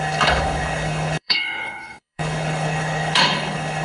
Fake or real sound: fake